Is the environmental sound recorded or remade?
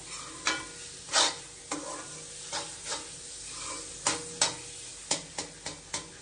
recorded